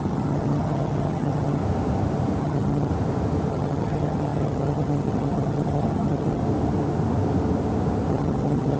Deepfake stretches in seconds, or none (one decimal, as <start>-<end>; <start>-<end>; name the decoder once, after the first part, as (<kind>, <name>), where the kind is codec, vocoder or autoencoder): 0.0-1.6 (vocoder, HiFi-GAN); 2.4-2.9; 3.5-6.4; 8.1-8.8